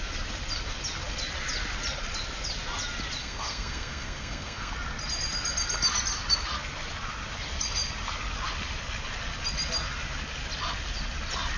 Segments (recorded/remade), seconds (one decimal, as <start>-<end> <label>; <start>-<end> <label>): 0.0-3.2 recorded; 3.2-4.7 remade; 4.7-11.6 recorded